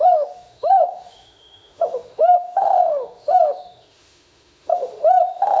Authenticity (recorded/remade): remade